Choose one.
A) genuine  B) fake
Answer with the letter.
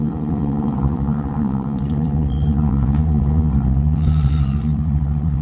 B